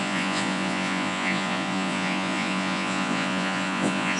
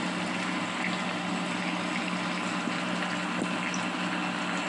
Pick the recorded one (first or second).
second